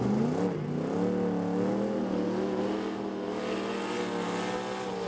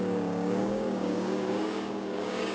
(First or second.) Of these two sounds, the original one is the first